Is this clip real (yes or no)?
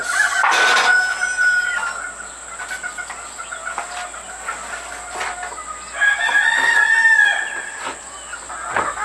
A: yes